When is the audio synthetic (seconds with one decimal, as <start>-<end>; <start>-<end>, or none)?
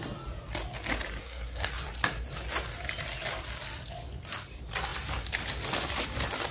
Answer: 1.2-1.7